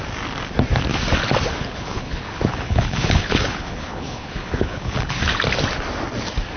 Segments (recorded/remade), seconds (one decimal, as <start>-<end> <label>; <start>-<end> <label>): 0.0-1.6 recorded; 1.6-5.2 remade; 5.2-6.6 recorded